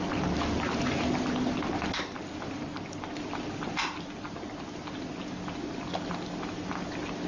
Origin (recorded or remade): recorded